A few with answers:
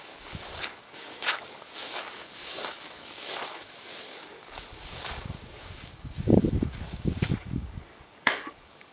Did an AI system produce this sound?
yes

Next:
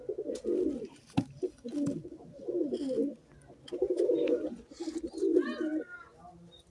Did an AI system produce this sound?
no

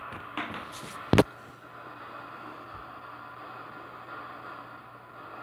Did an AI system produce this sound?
no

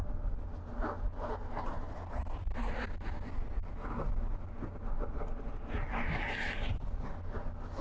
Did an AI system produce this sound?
no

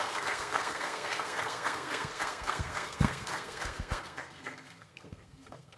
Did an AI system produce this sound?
yes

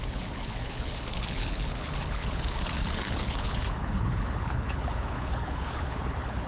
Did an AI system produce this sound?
yes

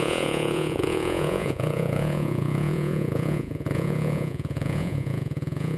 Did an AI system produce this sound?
yes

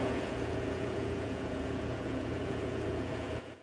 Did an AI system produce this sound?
yes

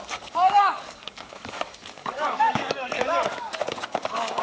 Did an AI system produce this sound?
yes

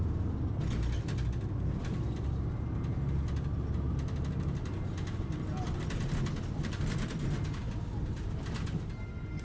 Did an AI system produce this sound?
no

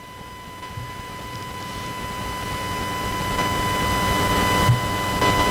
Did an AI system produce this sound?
no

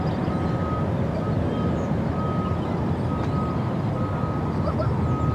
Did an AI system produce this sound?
no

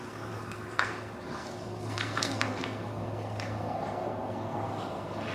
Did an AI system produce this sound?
yes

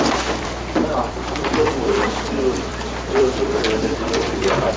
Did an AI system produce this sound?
yes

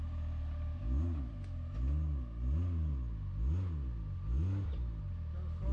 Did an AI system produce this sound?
no